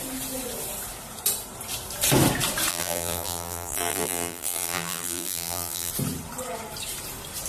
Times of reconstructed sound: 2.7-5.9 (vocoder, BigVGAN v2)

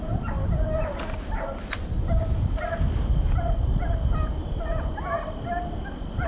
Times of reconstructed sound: none

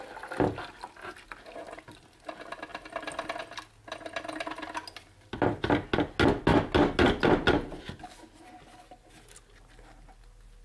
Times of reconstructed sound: 2.7-3.4 (vocoder, BigVGAN v2)

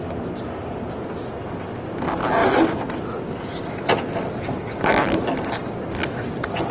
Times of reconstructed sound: 0.0-6.7 (vocoder, BigVGAN v2)